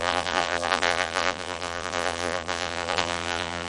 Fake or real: fake